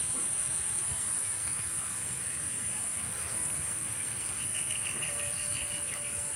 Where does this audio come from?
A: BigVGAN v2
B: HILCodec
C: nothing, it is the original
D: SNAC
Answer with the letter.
D